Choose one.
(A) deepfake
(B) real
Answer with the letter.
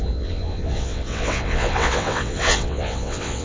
A